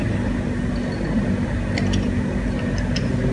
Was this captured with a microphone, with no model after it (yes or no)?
yes